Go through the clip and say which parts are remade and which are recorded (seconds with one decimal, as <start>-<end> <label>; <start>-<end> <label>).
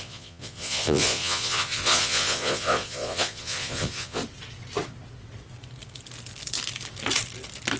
0.0-4.2 remade; 4.2-7.8 recorded